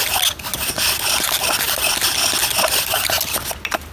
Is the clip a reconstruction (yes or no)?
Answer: no